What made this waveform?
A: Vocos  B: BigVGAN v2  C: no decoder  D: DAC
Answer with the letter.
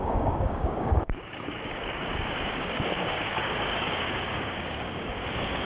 D